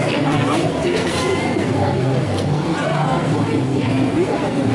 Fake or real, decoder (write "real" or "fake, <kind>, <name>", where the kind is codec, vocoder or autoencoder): fake, codec, SNAC